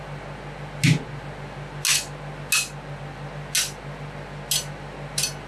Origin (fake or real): real